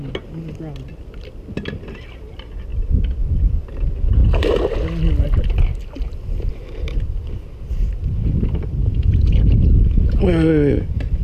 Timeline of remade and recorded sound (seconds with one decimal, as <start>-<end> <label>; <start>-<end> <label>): 0.0-8.8 recorded; 8.8-9.4 remade; 9.4-11.2 recorded